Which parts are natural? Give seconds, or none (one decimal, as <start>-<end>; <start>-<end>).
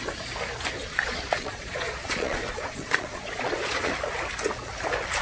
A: 0.0-0.8; 3.9-5.2